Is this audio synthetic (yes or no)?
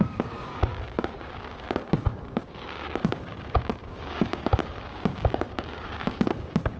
yes